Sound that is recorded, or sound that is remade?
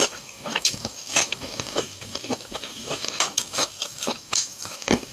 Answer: remade